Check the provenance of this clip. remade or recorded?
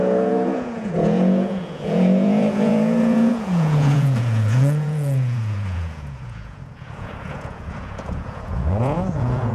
remade